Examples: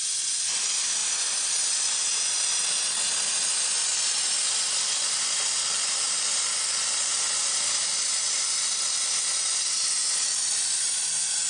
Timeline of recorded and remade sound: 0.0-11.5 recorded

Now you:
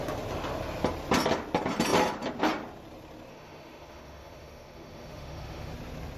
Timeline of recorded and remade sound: 0.0-3.3 recorded; 3.3-5.7 remade; 5.7-6.2 recorded

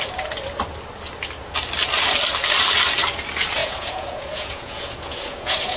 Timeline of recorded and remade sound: 0.0-3.6 recorded; 3.6-5.8 remade

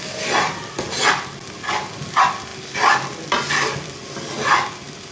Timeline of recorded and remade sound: 0.0-2.5 recorded; 2.5-4.2 remade; 4.2-5.1 recorded

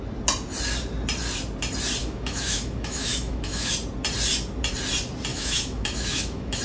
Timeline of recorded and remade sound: 0.0-2.0 recorded; 2.0-3.7 remade; 3.7-5.3 recorded; 5.3-6.6 remade

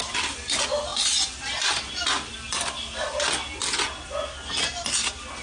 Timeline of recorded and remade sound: 0.0-5.4 recorded